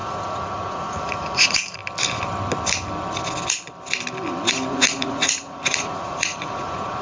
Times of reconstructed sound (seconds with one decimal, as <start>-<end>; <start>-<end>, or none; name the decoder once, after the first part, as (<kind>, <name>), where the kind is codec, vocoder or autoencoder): 0.0-1.8 (vocoder, Vocos); 4.7-7.0